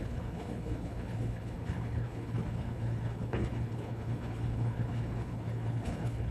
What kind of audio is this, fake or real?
fake